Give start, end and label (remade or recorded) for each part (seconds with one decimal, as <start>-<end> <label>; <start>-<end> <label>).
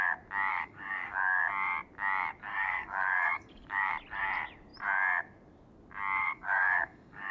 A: 0.0-0.5 recorded; 0.5-1.4 remade; 1.4-2.5 recorded; 2.5-3.9 remade; 3.9-6.2 recorded; 6.2-7.3 remade